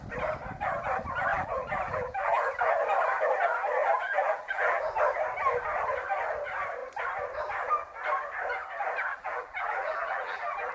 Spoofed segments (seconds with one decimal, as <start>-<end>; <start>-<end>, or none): 1.3-2.5; 3.8-4.9; 9.1-10.7